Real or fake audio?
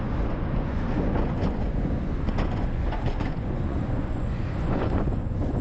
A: fake